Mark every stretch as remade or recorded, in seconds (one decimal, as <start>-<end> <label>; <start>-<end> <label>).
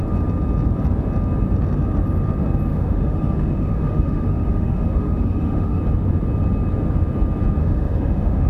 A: 0.0-2.7 recorded; 2.7-5.8 remade; 5.8-7.6 recorded; 7.6-8.5 remade